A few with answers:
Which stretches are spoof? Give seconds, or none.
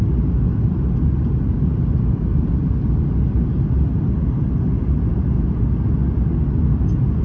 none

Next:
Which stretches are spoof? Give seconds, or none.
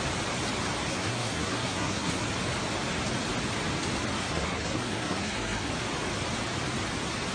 0.9-2.2; 4.2-5.7